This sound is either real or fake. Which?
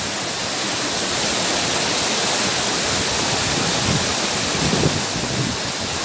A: real